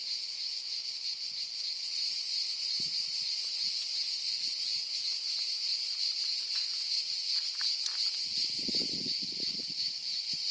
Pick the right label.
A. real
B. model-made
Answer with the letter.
A